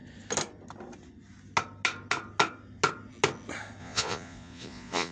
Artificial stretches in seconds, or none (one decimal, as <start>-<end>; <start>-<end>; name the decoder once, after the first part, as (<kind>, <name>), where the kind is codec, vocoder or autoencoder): 3.8-5.1 (vocoder, Vocos)